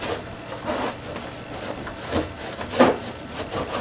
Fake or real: real